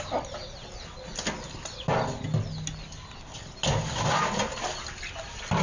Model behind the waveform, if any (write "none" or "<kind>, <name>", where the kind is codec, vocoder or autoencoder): none